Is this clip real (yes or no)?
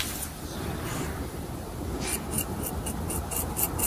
yes